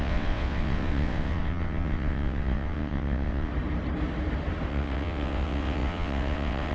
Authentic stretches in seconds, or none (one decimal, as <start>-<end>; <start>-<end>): 3.5-4.7